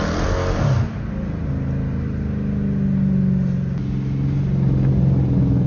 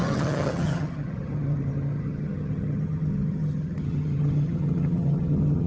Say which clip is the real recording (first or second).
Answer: first